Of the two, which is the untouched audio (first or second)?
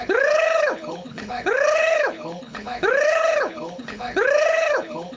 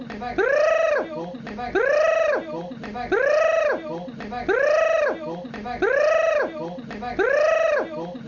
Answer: second